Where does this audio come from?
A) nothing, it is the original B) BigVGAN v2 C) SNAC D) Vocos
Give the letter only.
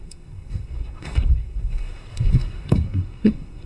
C